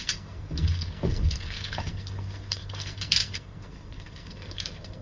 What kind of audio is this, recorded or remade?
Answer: remade